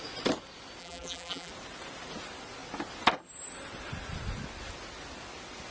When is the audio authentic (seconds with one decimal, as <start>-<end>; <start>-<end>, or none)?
0.0-0.8; 1.5-5.7